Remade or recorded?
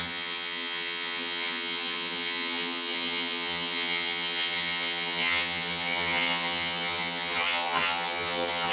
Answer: remade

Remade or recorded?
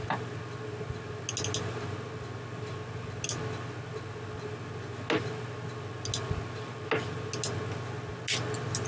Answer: recorded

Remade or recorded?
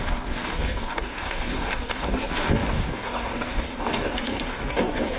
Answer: remade